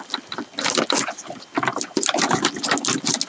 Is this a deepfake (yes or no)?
no